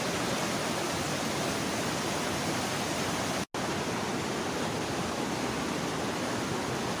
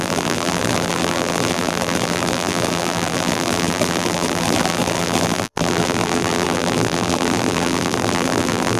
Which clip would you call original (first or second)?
first